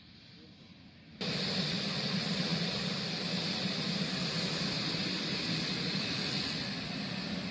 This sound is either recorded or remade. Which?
recorded